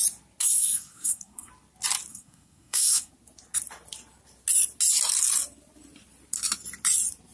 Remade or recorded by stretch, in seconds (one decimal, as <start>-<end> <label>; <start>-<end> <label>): 0.0-0.4 recorded; 0.4-1.5 remade; 1.5-2.1 recorded; 2.1-3.1 remade; 3.1-7.3 recorded